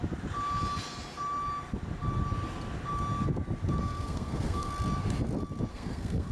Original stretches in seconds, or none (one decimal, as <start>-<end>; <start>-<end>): 0.0-3.8; 4.7-5.7